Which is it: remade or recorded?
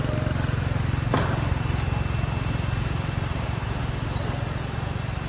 recorded